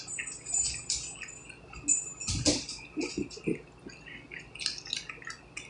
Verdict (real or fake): real